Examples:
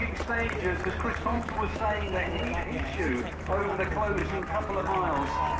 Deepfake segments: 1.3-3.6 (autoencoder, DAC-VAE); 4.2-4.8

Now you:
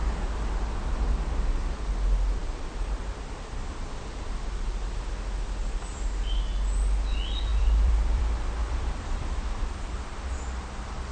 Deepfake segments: 2.4-3.0 (vocoder, BigVGAN v2); 7.5-8.2; 8.6-9.6